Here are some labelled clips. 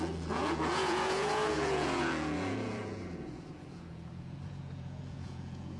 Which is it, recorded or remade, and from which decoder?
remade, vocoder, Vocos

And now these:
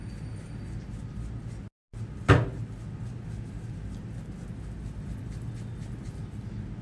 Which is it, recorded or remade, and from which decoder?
recorded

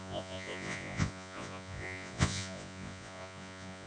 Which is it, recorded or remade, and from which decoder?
remade, vocoder, Vocos